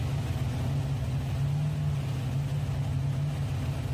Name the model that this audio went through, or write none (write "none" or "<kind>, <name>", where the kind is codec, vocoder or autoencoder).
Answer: none